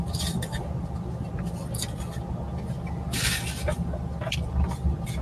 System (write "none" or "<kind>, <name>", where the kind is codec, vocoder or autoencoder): none